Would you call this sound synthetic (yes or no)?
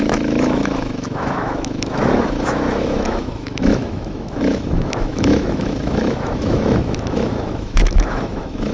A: yes